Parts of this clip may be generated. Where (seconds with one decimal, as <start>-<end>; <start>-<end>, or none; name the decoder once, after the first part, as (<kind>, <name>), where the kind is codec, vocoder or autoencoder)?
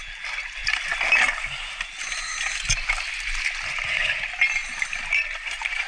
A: 4.6-5.9 (vocoder, BigVGAN v2)